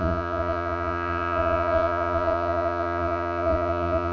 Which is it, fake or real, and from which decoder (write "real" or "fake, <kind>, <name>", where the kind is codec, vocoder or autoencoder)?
fake, vocoder, Vocos